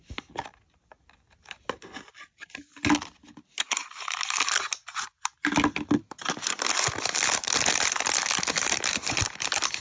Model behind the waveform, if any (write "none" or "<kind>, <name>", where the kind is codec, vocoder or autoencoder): none